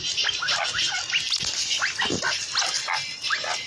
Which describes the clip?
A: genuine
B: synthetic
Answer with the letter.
A